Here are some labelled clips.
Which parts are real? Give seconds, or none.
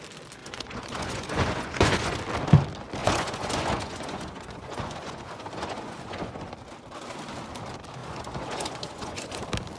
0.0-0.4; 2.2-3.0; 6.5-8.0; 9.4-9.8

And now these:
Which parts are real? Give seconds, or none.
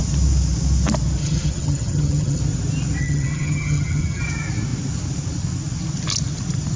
0.0-1.2; 2.4-3.0; 4.2-6.8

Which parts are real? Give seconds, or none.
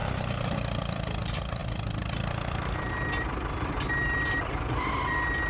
0.0-5.5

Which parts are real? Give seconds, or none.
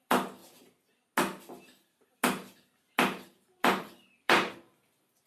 0.4-3.6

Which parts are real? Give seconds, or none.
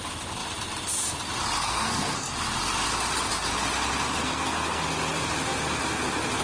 0.0-1.6; 2.3-4.2; 4.8-6.4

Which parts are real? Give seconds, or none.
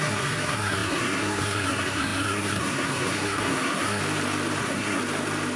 4.0-4.6; 5.0-5.6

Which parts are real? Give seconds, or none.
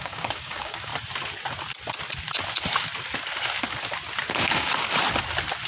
0.9-4.3; 4.7-5.7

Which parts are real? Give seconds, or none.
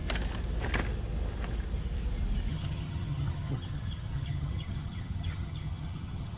0.0-2.5